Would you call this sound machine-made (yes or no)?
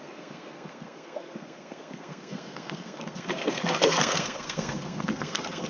yes